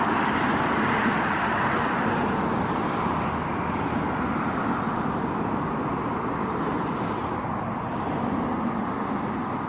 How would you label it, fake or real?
real